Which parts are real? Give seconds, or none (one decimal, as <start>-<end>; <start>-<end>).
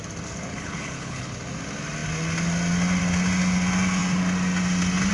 0.0-0.5; 1.3-5.1